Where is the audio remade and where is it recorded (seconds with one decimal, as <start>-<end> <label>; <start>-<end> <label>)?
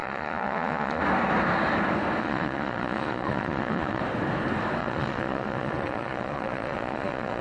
0.0-1.0 remade; 1.0-2.2 recorded; 2.2-4.0 remade; 4.0-4.8 recorded; 4.8-7.4 remade